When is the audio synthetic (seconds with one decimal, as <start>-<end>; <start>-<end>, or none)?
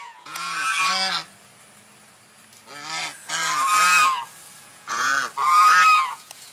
0.0-0.7; 4.6-5.1; 6.1-6.5